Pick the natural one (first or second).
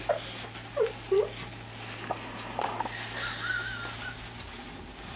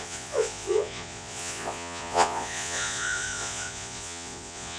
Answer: first